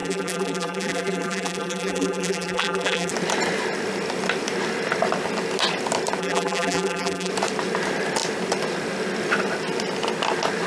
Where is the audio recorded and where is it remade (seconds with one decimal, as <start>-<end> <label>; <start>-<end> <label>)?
0.0-3.1 remade; 3.1-6.2 recorded; 6.2-7.3 remade; 7.3-10.7 recorded